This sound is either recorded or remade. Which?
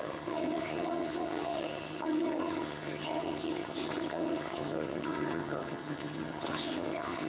remade